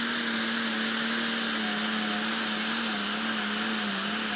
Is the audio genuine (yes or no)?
yes